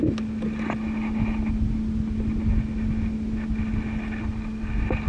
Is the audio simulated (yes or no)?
no